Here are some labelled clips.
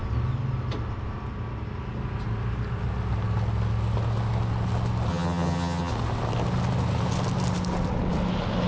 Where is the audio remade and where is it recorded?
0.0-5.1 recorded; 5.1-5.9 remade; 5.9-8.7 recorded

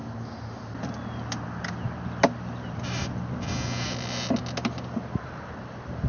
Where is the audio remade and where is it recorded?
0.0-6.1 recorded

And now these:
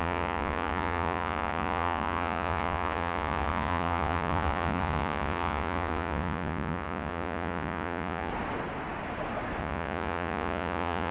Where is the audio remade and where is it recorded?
0.0-8.3 remade; 8.3-9.6 recorded; 9.6-11.1 remade